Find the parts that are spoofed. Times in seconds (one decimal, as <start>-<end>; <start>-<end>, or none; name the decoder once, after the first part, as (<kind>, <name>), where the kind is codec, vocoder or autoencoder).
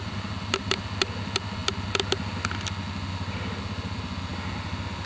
none